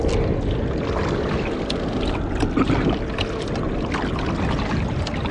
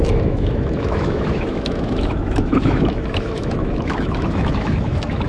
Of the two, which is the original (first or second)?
first